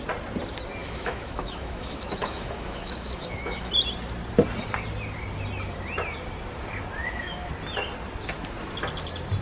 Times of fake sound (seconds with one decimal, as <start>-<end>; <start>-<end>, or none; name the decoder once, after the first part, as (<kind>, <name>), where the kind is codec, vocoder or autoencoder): 0.8-3.7 (autoencoder, DAC-VAE); 7.0-7.5